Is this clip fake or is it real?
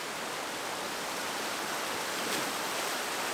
real